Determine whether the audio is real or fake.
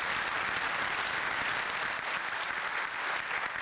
real